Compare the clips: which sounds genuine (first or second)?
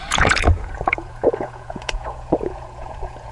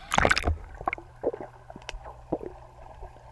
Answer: second